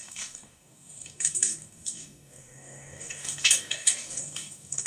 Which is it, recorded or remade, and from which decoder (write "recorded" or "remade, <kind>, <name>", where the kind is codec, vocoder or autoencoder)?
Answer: remade, codec, DAC